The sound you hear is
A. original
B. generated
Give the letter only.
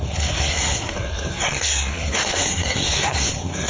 B